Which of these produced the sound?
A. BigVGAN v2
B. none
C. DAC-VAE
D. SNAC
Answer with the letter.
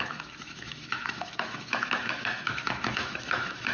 C